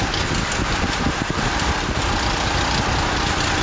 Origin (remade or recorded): recorded